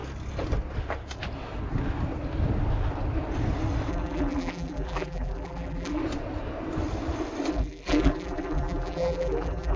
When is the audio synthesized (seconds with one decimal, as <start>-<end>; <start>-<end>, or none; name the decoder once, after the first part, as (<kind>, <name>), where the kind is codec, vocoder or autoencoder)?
3.9-6.0 (vocoder, BigVGAN v2); 7.5-9.8